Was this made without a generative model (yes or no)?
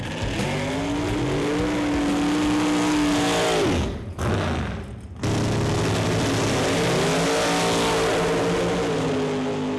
yes